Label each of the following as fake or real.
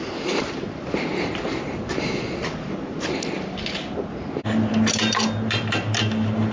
real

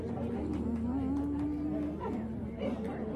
real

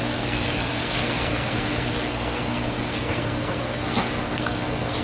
fake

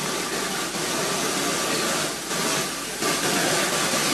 real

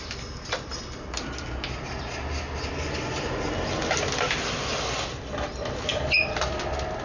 real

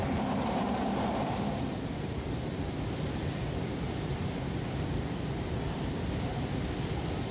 fake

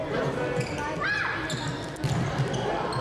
real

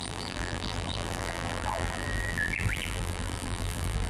fake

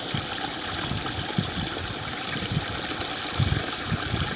real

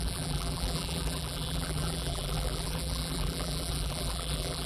fake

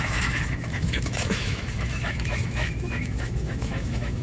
fake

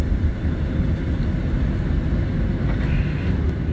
real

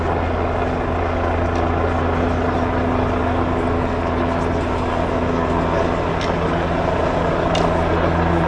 real